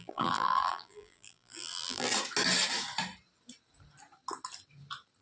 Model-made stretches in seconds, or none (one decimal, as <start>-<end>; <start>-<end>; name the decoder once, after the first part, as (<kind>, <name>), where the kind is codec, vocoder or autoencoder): 0.0-2.1 (vocoder, BigVGAN v2)